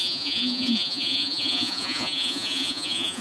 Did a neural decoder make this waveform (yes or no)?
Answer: yes